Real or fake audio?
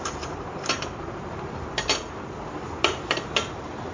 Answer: fake